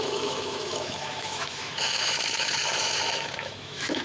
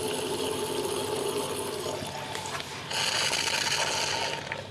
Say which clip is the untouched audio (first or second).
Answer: second